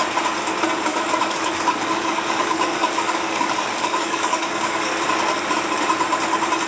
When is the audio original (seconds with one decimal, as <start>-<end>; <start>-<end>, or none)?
0.0-0.9; 4.9-6.7